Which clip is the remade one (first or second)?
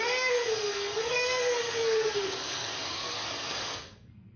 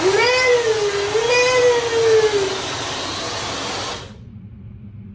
first